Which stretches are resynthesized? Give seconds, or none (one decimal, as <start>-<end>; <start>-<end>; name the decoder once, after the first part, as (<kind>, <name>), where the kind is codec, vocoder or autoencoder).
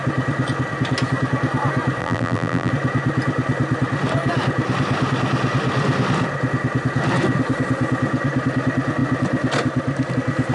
2.0-2.7 (vocoder, BigVGAN v2)